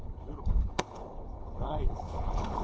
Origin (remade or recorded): remade